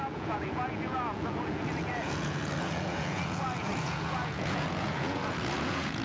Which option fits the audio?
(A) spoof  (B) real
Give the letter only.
A